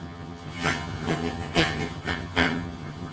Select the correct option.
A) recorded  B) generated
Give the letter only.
B